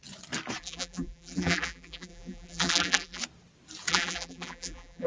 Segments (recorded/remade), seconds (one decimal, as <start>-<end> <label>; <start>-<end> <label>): 0.0-0.6 recorded; 0.6-3.2 remade; 3.2-3.9 recorded; 3.9-5.1 remade